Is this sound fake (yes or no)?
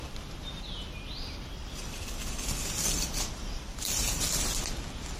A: no